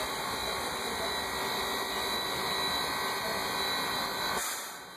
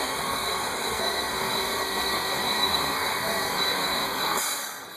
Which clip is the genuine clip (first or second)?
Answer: first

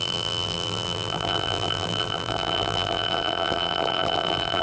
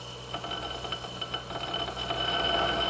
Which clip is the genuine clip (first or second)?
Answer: second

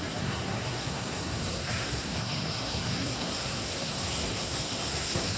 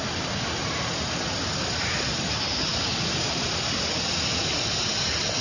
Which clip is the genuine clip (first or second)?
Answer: second